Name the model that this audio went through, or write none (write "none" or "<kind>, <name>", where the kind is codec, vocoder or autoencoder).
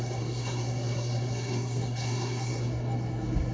codec, SNAC